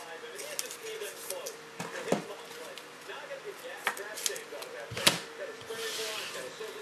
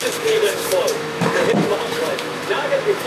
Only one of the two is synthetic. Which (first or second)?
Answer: second